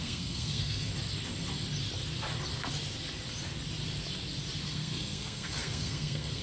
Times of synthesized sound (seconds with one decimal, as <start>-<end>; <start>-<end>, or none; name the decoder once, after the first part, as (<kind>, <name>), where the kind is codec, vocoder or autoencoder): 0.0-0.9 (codec, SNAC); 4.7-6.4